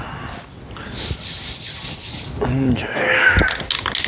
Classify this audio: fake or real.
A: real